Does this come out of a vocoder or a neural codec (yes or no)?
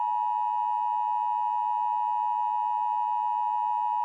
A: no